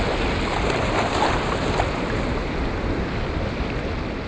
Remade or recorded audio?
recorded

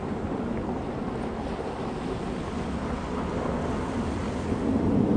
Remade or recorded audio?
recorded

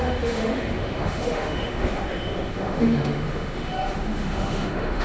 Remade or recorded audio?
remade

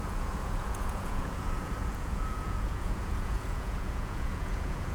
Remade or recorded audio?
remade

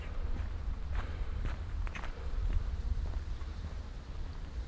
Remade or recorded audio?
remade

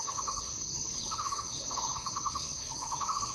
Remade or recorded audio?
remade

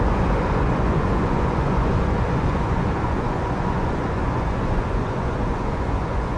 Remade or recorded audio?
remade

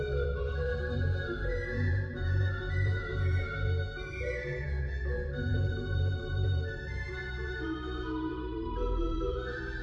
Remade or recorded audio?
remade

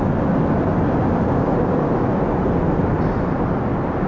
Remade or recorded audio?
recorded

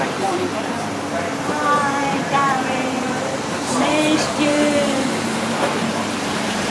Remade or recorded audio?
remade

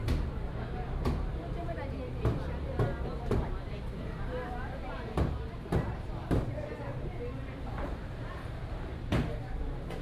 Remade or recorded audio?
remade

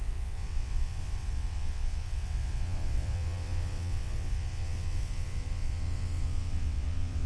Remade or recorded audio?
remade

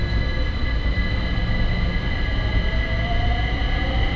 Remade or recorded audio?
recorded